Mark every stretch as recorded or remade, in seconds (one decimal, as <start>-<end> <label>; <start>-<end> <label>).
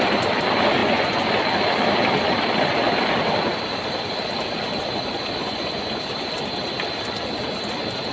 0.0-0.8 recorded; 0.8-1.3 remade; 1.3-5.4 recorded; 5.4-6.0 remade; 6.0-8.1 recorded